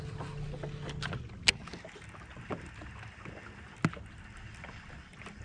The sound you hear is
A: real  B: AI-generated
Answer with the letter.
A